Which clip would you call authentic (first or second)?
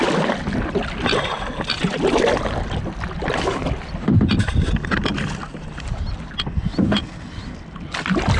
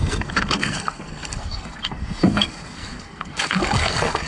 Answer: first